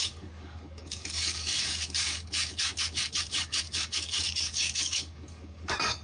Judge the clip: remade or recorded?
remade